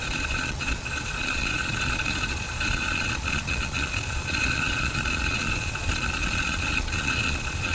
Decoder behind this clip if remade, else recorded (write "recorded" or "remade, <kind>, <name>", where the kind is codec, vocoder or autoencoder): remade, vocoder, Vocos